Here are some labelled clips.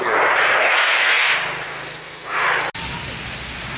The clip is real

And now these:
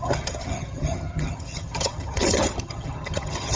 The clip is fake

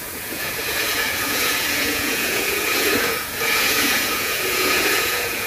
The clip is fake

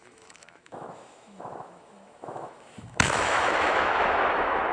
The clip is fake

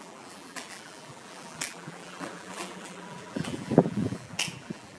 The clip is fake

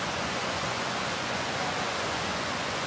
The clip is fake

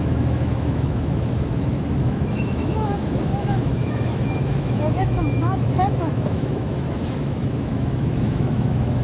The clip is fake